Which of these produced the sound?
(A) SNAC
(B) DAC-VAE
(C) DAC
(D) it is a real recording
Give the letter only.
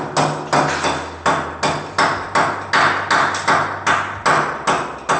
D